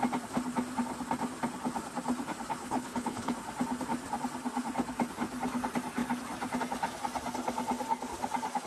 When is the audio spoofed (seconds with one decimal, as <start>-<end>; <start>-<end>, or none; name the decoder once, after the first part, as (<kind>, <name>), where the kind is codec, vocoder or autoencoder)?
2.6-3.3 (codec, HILCodec)